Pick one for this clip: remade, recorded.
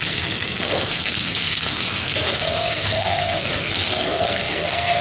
remade